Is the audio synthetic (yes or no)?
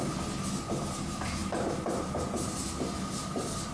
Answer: no